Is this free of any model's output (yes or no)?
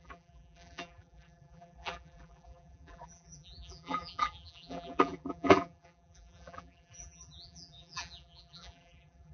no